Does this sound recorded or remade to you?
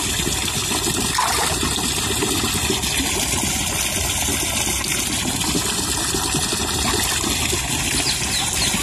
recorded